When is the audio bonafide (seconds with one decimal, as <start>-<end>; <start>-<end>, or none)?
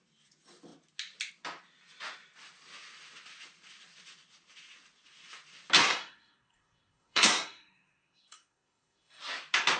0.0-5.8; 9.2-9.8